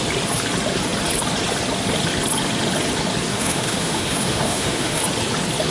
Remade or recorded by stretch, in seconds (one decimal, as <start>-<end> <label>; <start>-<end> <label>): 0.0-3.3 recorded; 3.3-5.0 remade; 5.0-5.7 recorded